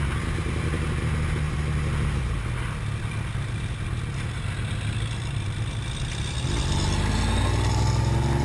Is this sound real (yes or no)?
yes